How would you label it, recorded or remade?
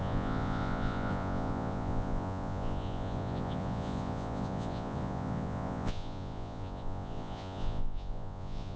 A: remade